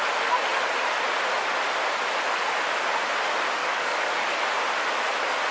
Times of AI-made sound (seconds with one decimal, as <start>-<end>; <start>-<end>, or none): 3.6-4.4